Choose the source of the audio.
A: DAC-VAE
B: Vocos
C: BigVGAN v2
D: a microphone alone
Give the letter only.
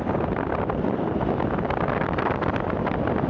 D